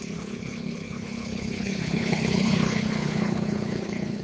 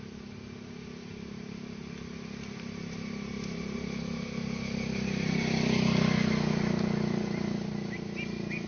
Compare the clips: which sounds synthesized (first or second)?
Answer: first